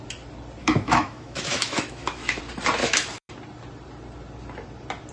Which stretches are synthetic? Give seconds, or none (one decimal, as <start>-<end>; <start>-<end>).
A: 0.6-2.4; 2.8-3.3